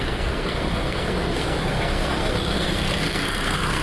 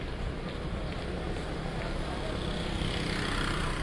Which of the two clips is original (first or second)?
second